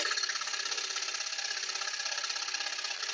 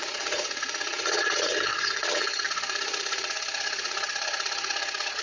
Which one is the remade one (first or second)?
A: second